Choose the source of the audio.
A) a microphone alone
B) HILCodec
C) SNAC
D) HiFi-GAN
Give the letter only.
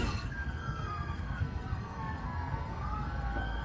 C